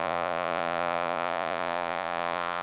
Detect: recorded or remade remade